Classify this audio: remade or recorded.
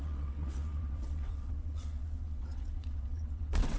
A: remade